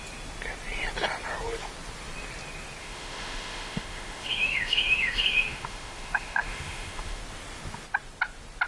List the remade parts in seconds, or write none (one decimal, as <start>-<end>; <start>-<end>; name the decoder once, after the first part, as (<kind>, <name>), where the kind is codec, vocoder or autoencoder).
2.8-7.2 (autoencoder, DAC-VAE)